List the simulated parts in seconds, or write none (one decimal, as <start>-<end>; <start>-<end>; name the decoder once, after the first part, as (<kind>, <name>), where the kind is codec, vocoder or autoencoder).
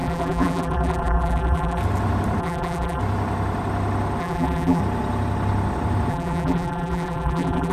0.0-1.8 (vocoder, BigVGAN v2); 2.4-3.0; 4.2-4.8; 6.1-7.7